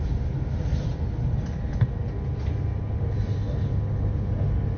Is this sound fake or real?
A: real